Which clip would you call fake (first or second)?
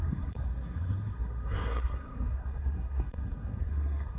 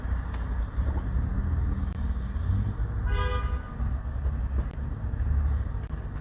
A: first